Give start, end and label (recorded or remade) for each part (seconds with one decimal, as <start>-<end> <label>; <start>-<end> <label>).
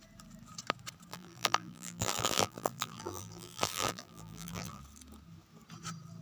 0.0-1.1 recorded; 1.1-4.8 remade; 4.8-6.2 recorded